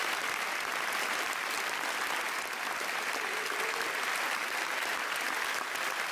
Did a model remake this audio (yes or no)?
no